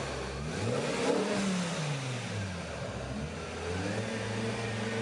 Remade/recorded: recorded